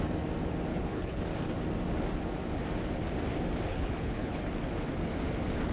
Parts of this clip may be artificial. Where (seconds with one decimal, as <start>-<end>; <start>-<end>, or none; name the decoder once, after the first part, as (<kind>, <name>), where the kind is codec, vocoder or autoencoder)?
0.7-1.2 (codec, HILCodec); 3.7-4.5